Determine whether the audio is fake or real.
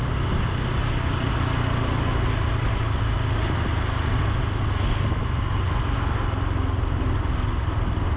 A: real